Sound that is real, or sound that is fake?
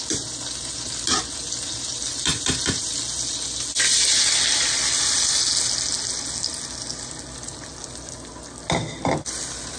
real